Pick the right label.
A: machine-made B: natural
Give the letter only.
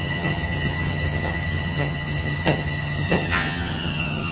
A